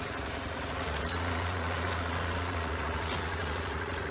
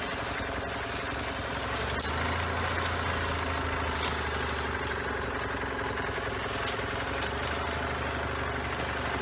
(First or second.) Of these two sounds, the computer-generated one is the first